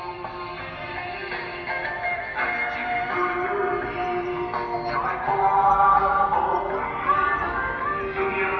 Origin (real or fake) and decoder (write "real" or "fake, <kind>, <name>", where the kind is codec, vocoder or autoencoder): real